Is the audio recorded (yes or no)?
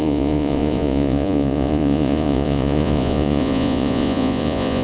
no